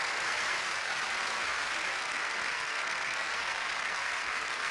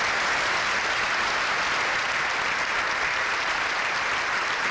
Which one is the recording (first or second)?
second